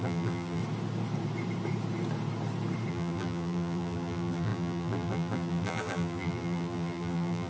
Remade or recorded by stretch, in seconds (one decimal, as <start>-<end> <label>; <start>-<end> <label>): 0.0-0.6 remade; 0.6-2.9 recorded; 2.9-7.5 remade